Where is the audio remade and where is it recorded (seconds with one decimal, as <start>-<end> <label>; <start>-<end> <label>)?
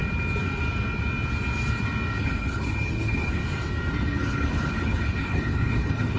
0.0-2.2 recorded; 2.2-3.4 remade; 3.4-4.0 recorded; 4.0-6.2 remade